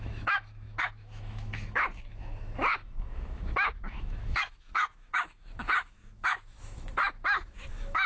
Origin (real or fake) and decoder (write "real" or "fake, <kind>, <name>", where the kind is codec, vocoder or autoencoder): fake, autoencoder, DAC-VAE